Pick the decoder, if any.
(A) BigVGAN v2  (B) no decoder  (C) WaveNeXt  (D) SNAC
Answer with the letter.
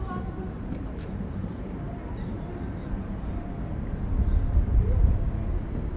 A